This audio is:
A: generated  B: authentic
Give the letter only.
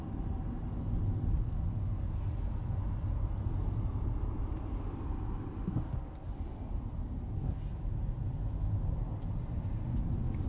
B